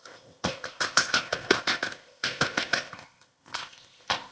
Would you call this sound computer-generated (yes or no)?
yes